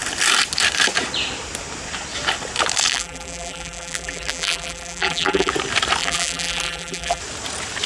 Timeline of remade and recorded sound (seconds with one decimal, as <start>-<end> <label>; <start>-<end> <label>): 0.0-2.9 recorded; 2.9-5.5 remade; 5.5-6.0 recorded; 6.0-7.2 remade; 7.2-7.9 recorded